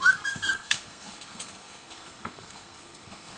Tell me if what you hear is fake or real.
fake